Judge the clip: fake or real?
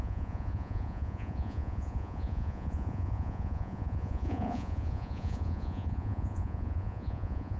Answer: fake